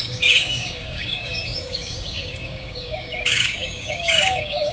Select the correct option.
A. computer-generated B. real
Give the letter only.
A